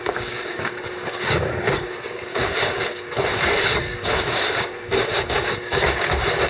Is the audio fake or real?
fake